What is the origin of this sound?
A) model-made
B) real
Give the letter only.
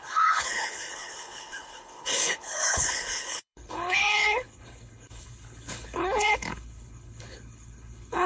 A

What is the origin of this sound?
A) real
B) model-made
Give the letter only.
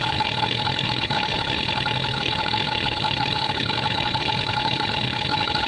B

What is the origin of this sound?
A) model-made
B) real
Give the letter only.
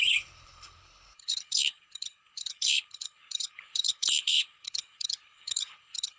A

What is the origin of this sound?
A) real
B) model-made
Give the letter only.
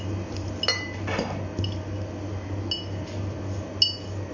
A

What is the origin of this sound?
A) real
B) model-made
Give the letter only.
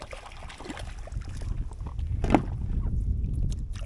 A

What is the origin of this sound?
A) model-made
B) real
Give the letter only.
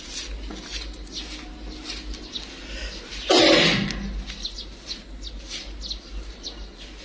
B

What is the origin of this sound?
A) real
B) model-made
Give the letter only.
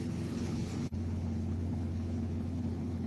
B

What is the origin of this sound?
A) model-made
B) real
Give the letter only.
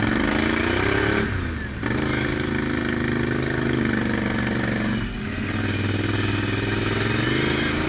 B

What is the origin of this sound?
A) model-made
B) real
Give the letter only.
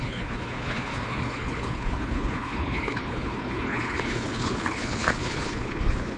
A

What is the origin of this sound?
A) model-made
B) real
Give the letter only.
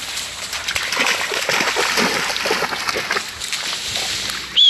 B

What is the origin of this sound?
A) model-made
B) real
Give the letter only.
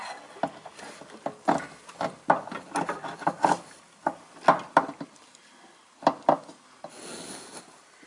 B